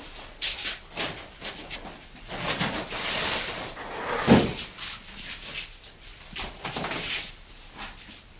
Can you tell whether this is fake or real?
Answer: real